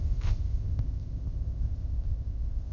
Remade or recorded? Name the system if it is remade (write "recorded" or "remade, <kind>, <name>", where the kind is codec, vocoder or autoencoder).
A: remade, codec, ZipCodec